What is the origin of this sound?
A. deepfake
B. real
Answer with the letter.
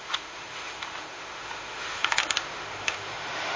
A